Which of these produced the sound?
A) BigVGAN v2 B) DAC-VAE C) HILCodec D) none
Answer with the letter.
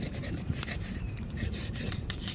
A